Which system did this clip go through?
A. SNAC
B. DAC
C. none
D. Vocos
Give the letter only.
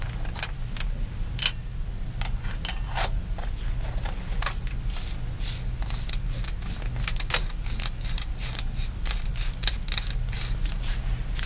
C